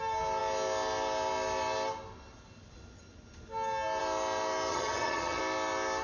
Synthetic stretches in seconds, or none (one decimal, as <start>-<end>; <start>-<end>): 4.7-5.4